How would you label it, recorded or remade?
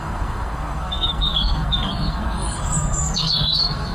remade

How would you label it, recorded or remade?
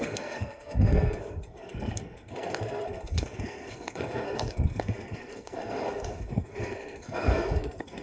remade